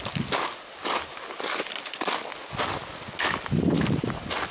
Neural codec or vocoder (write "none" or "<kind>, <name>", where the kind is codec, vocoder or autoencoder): none